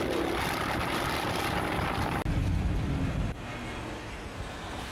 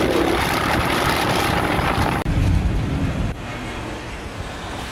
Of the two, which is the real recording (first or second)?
first